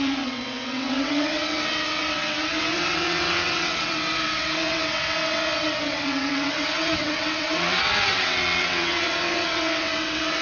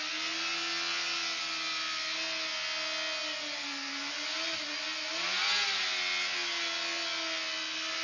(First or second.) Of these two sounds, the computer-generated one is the first